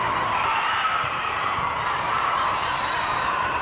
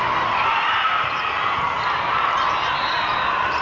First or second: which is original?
second